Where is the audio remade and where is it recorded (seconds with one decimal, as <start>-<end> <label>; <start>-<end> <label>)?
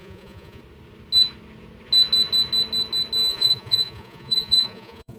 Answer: 0.0-0.6 remade; 0.6-3.3 recorded; 3.3-5.2 remade